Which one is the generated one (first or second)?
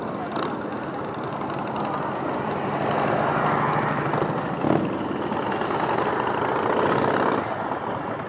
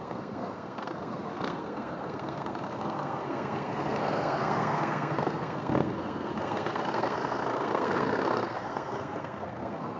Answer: second